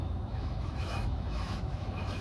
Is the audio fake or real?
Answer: fake